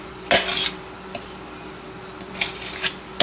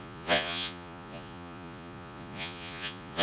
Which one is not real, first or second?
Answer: second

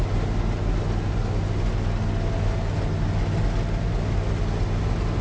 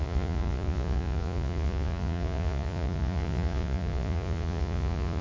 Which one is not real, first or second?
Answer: second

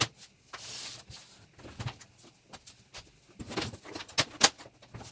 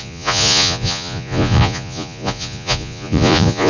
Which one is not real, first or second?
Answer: second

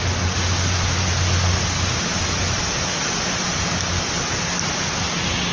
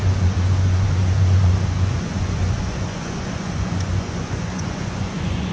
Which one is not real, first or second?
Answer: second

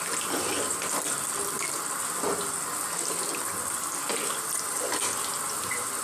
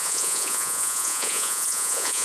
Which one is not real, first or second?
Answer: second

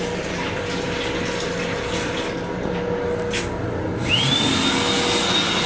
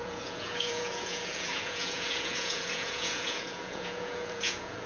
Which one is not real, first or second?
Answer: second